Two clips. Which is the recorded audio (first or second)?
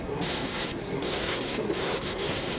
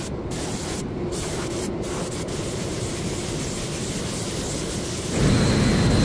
second